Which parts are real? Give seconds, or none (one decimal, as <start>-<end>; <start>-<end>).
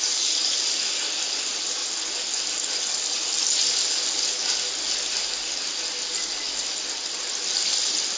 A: 0.0-8.2